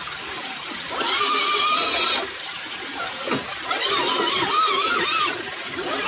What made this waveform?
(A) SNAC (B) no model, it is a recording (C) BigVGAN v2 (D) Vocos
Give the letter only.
B